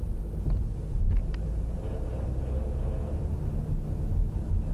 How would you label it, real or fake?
real